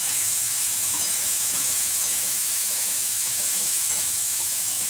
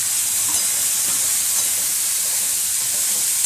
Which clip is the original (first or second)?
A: second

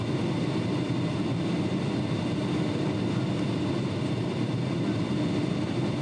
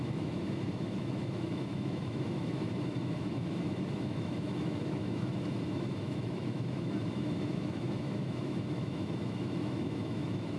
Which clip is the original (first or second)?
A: first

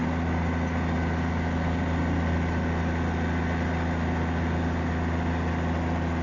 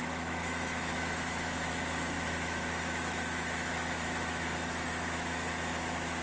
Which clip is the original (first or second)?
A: first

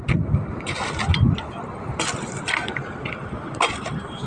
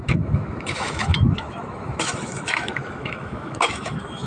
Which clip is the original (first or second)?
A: first